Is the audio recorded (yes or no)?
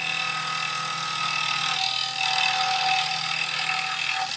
yes